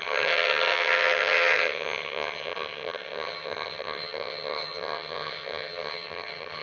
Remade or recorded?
remade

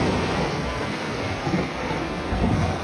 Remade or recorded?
remade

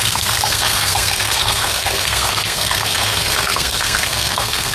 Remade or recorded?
remade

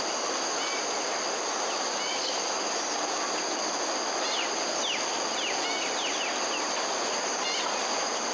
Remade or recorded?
recorded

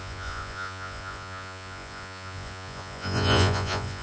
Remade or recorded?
remade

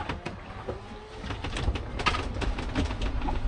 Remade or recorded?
recorded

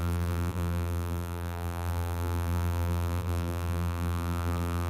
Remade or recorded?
remade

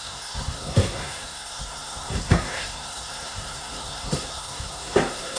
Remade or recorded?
remade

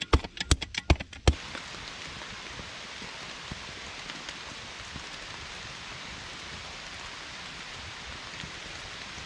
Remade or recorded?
recorded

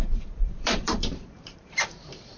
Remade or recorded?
remade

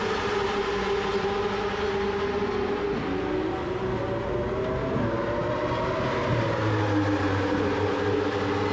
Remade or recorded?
recorded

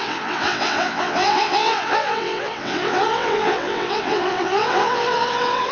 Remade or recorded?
remade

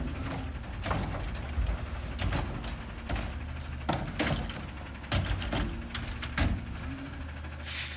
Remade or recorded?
recorded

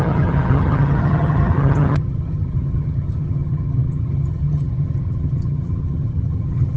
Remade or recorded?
remade